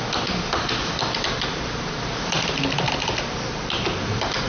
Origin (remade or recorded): remade